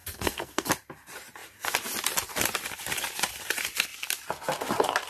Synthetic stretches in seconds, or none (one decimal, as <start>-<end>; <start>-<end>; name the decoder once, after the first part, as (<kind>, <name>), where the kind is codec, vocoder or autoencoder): 0.0-0.7 (codec, SNAC)